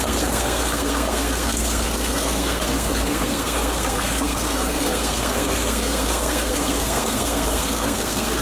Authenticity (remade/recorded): remade